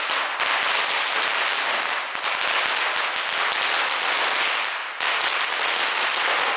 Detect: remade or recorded recorded